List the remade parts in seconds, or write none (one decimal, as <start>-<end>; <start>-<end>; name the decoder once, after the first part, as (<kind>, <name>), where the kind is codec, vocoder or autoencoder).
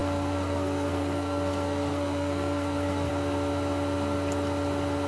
0.0-3.1 (codec, SNAC)